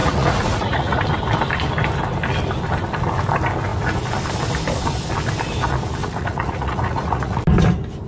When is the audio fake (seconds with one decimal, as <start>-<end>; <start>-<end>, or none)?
0.0-1.0; 6.0-7.4